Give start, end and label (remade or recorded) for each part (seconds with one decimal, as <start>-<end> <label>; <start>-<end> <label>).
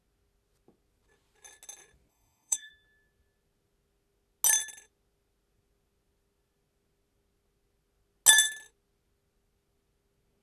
0.0-2.1 recorded; 2.1-2.7 remade; 2.7-10.4 recorded